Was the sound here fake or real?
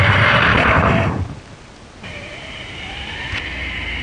real